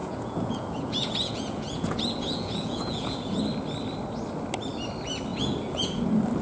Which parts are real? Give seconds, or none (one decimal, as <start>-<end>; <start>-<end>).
3.4-5.3; 6.0-6.4